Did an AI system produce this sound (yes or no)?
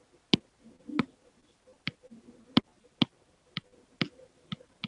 no